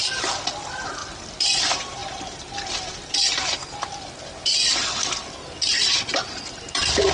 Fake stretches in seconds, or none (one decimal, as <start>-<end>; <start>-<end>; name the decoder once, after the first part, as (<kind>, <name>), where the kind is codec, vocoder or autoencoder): none